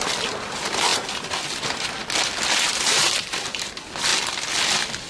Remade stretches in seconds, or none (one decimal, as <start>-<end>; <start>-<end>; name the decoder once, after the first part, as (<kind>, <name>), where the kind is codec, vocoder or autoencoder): none